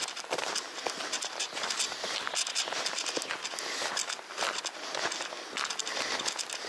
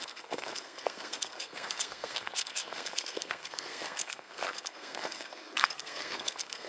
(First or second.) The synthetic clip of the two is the second